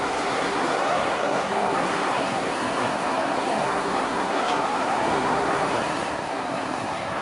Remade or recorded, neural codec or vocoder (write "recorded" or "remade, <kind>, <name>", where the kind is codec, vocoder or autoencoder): remade, codec, SNAC